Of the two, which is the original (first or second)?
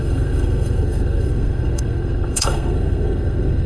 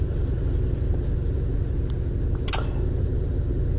second